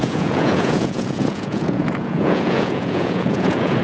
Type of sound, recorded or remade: remade